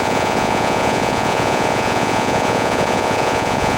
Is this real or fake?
fake